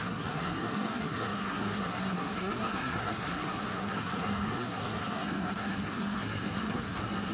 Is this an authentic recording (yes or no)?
no